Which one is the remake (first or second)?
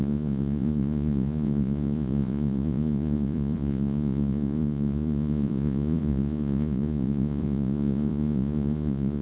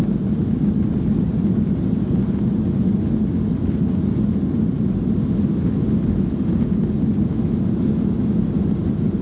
first